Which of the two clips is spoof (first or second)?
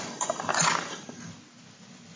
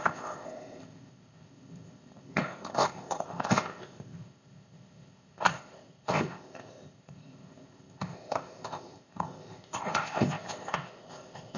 second